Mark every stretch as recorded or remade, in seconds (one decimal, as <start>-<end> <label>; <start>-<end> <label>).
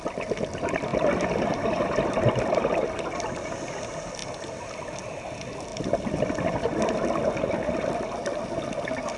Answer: 0.0-0.9 recorded; 0.9-2.6 remade; 2.6-4.2 recorded; 4.2-5.2 remade; 5.2-5.7 recorded; 5.7-7.2 remade; 7.2-9.2 recorded